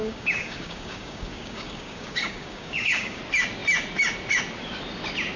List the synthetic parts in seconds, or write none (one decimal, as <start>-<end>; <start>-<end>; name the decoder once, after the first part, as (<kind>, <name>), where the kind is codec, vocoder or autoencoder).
0.0-3.2 (codec, DAC)